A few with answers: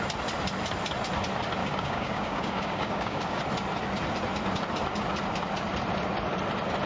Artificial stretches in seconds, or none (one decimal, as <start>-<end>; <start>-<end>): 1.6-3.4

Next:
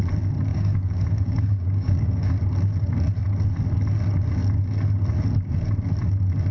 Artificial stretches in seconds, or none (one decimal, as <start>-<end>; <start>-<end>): 0.5-2.3

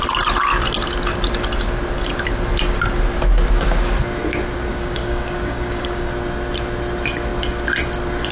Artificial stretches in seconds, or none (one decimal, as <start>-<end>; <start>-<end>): 4.7-6.1